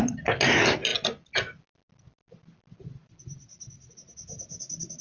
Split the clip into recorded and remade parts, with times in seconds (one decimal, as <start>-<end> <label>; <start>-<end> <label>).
0.0-5.0 recorded